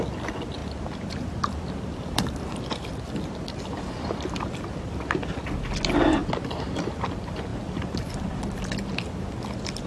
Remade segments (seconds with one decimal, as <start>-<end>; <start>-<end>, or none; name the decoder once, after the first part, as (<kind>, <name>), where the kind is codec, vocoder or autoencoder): 0.6-4.9 (vocoder, BigVGAN v2); 7.5-8.4